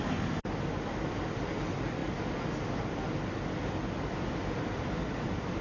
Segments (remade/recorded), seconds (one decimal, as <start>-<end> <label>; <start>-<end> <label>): 0.0-5.6 recorded

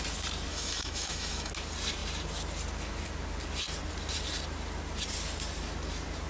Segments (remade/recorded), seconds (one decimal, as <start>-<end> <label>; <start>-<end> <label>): 0.0-0.5 recorded; 0.5-1.5 remade; 1.5-6.3 recorded

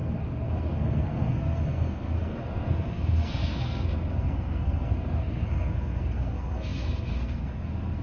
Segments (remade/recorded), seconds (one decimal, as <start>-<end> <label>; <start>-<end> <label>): 0.0-8.0 remade